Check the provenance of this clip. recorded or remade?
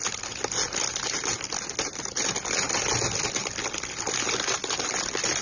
recorded